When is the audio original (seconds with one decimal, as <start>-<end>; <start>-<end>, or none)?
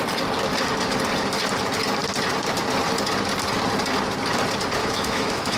0.0-4.8